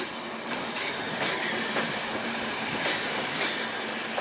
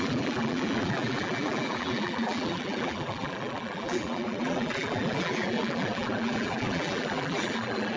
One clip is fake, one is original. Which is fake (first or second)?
second